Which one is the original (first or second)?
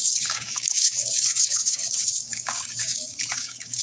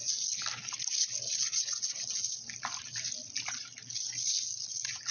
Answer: second